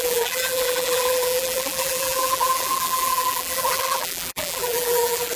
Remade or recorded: remade